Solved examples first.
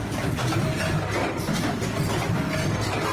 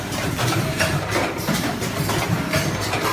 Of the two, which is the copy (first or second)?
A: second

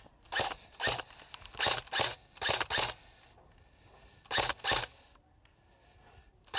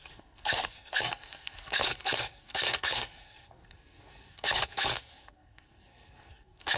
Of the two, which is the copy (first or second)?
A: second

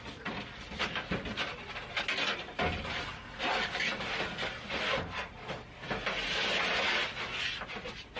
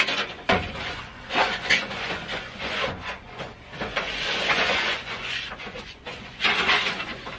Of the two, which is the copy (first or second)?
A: second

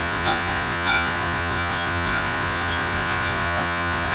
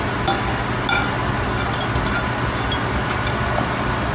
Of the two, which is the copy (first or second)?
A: first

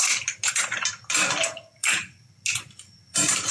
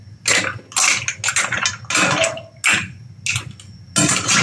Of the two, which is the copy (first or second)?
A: first